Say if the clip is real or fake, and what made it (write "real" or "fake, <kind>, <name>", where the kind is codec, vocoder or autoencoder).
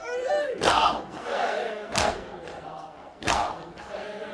fake, codec, SNAC